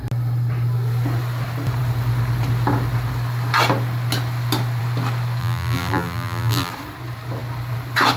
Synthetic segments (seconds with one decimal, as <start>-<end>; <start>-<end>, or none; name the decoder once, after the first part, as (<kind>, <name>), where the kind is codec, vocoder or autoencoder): 5.4-6.7 (vocoder, BigVGAN v2)